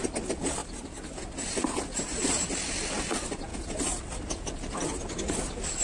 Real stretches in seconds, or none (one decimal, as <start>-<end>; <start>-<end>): 0.0-5.8